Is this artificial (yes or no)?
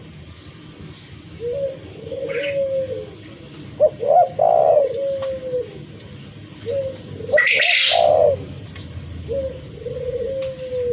no